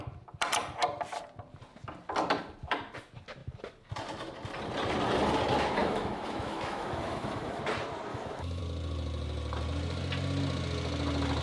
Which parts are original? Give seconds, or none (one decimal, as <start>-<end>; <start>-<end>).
0.0-5.8; 7.6-8.1; 8.6-11.4